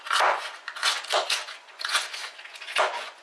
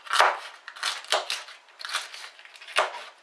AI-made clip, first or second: first